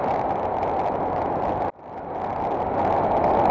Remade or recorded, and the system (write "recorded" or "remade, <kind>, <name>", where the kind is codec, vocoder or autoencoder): recorded